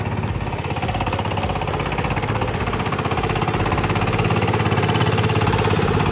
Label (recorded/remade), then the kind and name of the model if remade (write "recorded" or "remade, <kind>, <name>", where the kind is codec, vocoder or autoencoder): recorded